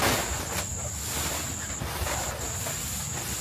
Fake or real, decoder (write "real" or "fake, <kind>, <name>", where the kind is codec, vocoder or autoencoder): real